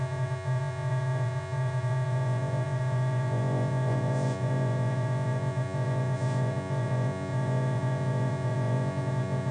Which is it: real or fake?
fake